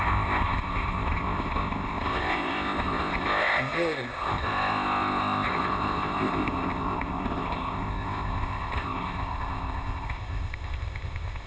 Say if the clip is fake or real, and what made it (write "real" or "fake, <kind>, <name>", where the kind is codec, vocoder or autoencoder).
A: fake, codec, ZipCodec